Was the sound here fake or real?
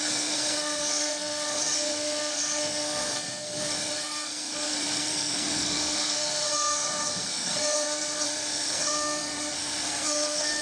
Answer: fake